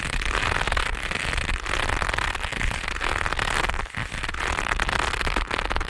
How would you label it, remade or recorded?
recorded